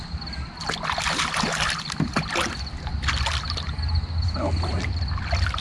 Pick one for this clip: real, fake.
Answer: real